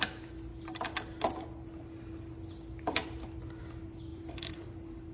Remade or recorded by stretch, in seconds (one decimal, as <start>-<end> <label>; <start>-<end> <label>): 0.0-4.1 recorded; 4.1-5.1 remade